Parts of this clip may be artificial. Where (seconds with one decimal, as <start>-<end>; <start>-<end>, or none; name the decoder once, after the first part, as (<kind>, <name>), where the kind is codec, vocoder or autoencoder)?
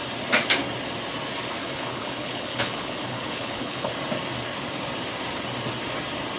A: 1.6-3.9 (codec, HILCodec)